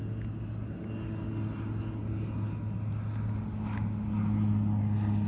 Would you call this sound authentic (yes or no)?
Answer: yes